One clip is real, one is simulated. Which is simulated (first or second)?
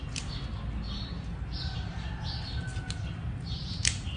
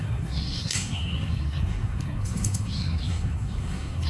second